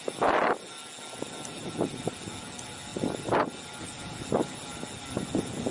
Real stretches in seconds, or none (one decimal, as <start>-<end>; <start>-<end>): 0.0-5.7